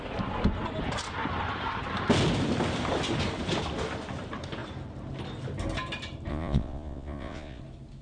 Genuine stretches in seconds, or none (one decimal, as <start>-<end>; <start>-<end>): 0.0-6.3; 7.6-8.0

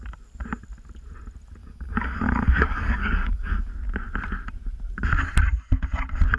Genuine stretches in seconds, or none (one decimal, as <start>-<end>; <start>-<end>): 0.0-1.6; 3.7-6.4

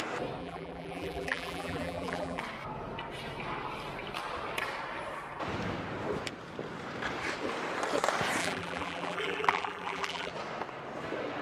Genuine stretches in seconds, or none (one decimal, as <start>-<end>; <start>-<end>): 0.0-0.4; 2.4-8.4; 10.3-11.4

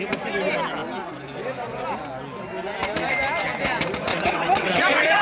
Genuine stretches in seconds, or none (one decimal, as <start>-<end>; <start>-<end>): 0.0-4.1

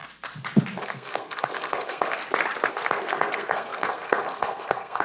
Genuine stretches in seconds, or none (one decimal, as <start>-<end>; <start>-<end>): 0.0-0.8; 2.2-2.7

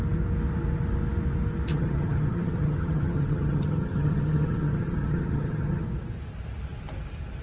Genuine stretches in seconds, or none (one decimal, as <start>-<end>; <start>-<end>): 0.0-1.7; 5.8-7.4

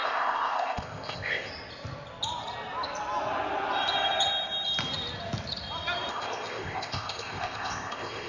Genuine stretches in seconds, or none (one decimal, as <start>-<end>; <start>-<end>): 1.5-6.1